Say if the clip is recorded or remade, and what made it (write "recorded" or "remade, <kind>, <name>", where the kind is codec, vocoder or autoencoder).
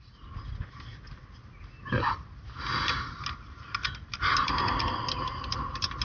recorded